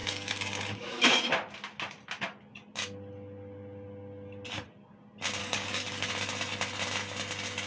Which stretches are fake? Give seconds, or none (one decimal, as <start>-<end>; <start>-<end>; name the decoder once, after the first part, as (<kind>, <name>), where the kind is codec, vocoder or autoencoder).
0.0-1.2 (codec, DAC); 5.4-6.1